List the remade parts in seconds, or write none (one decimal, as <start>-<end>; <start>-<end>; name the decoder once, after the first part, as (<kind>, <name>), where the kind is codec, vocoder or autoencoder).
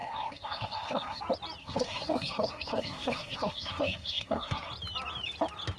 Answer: 0.0-1.2 (codec, SNAC); 1.6-4.7